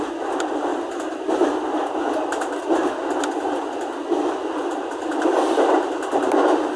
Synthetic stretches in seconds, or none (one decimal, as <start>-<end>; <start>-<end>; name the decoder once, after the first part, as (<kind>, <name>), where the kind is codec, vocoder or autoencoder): 0.0-0.7 (vocoder, BigVGAN v2); 4.8-5.3; 6.3-6.8